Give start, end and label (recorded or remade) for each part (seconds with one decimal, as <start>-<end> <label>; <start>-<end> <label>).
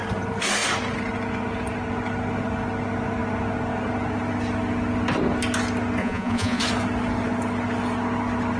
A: 0.0-6.0 recorded; 6.0-6.6 remade; 6.6-8.6 recorded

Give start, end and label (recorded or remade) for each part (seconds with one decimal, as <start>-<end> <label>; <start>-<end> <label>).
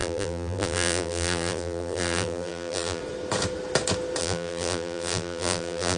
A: 0.0-3.0 remade; 3.0-4.2 recorded; 4.2-6.0 remade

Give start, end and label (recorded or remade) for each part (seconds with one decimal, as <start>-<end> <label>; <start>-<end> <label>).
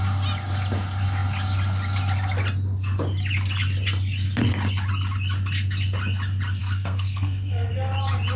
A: 0.0-6.6 recorded; 6.6-7.7 remade; 7.7-8.4 recorded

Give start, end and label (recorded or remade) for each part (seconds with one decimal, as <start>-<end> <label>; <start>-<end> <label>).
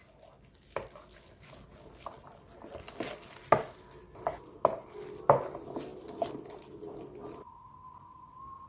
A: 0.0-8.7 recorded